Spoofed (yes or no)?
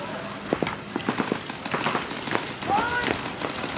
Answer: no